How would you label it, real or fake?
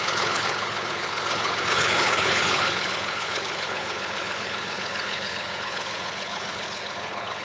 fake